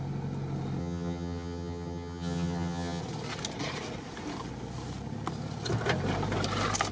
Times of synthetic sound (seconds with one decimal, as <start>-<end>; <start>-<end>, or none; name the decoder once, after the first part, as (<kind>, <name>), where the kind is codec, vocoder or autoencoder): 0.8-3.0 (vocoder, HiFi-GAN)